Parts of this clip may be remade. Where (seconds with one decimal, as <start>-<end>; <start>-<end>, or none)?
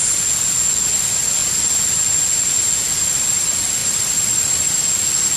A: 3.8-4.8